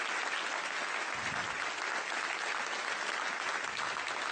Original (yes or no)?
yes